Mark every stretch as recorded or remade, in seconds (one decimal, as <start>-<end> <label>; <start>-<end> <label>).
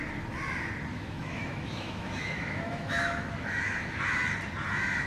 0.0-0.9 recorded; 0.9-4.0 remade; 4.0-5.1 recorded